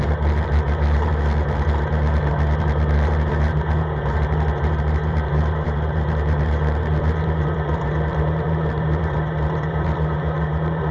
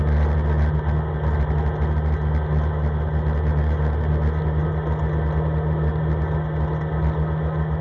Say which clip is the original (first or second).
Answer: second